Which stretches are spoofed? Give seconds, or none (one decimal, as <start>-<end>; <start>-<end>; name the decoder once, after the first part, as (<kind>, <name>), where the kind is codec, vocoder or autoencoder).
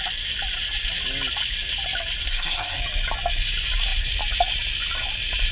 2.2-2.8 (codec, SNAC)